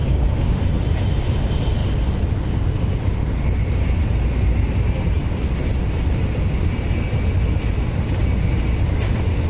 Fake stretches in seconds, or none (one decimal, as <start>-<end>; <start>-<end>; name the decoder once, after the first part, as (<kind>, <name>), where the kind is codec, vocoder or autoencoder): 0.0-0.6 (autoencoder, DAC-VAE)